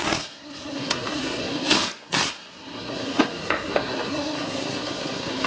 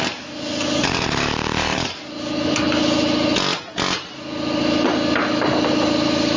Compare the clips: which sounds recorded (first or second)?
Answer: second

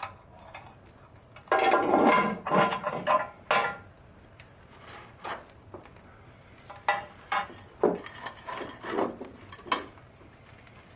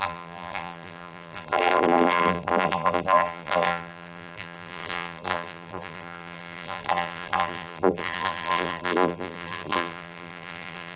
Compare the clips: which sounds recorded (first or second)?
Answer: first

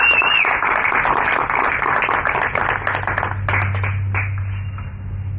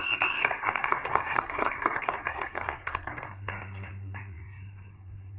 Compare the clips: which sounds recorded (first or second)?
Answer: first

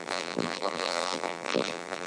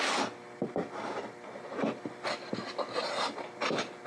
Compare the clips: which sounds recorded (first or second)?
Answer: second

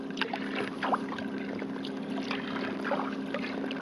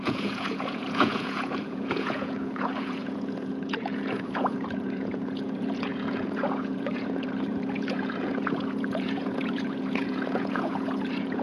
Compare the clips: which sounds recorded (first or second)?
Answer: first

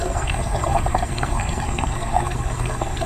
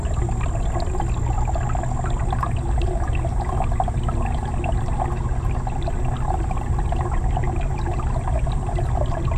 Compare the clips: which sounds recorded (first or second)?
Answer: second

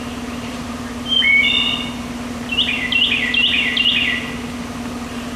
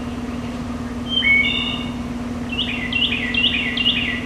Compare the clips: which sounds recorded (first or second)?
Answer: second